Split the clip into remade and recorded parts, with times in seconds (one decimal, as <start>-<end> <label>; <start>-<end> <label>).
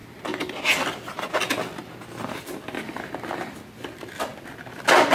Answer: 0.0-5.1 recorded